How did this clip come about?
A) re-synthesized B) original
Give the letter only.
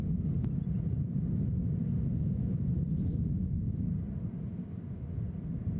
B